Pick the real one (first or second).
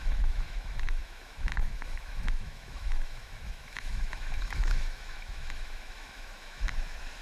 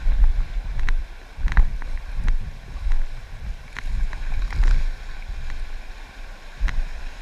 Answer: second